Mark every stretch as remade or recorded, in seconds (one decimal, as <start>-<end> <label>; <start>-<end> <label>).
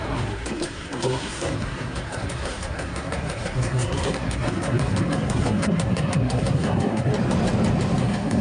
0.0-7.1 remade; 7.1-8.0 recorded; 8.0-8.4 remade